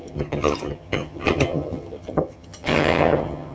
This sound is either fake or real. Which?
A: fake